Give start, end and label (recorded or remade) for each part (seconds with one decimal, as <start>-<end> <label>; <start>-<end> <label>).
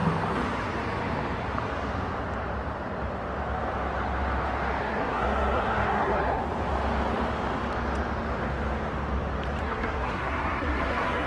0.0-4.8 recorded; 4.8-6.4 remade; 6.4-9.6 recorded; 9.6-11.3 remade